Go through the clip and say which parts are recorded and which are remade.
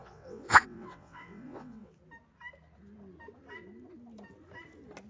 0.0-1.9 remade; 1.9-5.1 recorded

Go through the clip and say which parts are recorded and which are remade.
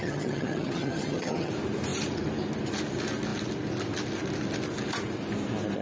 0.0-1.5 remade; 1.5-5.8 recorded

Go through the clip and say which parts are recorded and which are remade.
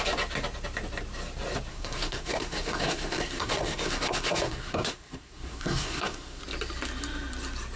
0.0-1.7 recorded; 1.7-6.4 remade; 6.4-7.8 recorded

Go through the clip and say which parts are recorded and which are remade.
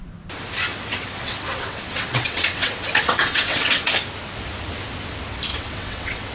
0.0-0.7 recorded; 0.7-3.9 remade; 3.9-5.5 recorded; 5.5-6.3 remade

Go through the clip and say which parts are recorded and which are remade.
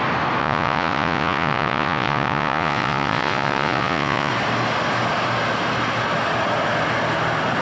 0.0-0.4 recorded; 0.4-4.3 remade; 4.3-7.6 recorded